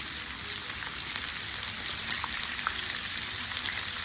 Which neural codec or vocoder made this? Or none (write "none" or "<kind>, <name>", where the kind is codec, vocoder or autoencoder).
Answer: none